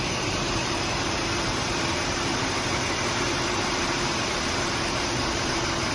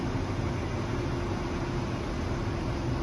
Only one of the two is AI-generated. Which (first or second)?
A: first